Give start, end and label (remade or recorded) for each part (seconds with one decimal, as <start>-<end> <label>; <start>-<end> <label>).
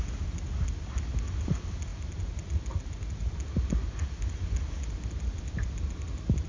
0.0-6.5 recorded